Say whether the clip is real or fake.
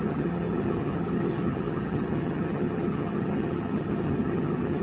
fake